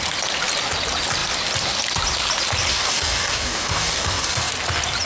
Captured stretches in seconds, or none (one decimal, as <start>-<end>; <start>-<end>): 0.0-2.7; 4.5-5.1